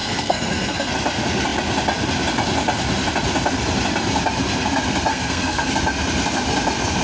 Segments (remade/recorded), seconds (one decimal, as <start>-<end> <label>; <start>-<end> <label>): 0.0-0.9 remade; 0.9-5.1 recorded; 5.1-5.7 remade; 5.7-7.0 recorded